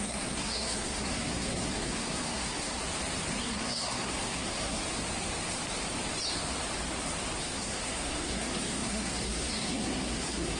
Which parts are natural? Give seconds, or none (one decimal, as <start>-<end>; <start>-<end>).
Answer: 2.8-3.4; 4.8-7.4